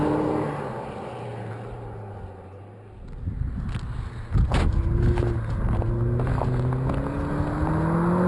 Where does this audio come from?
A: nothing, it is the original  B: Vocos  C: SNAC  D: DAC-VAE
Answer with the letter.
A